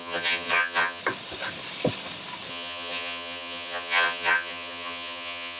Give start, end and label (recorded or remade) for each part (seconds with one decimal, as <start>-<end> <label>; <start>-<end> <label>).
0.0-1.0 remade; 1.0-2.5 recorded; 2.5-5.6 remade